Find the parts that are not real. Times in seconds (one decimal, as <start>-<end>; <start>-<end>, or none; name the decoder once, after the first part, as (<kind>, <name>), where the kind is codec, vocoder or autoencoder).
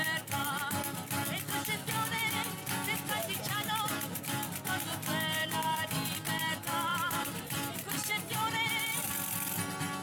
5.4-6.1 (vocoder, BigVGAN v2); 6.9-9.1